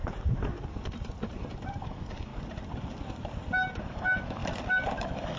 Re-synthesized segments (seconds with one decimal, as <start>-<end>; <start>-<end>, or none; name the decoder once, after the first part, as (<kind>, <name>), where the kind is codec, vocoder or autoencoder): 1.8-2.3 (autoencoder, DAC-VAE); 3.8-4.4; 5.0-5.4